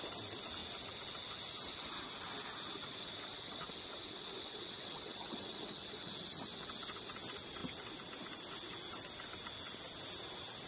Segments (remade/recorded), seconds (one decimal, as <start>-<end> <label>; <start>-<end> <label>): 0.0-2.8 recorded; 2.8-6.1 remade; 6.1-10.7 recorded